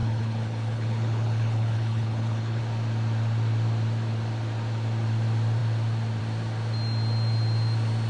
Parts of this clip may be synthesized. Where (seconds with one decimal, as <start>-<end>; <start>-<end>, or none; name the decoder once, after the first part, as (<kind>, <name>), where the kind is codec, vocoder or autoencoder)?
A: 0.0-2.6 (codec, HILCodec)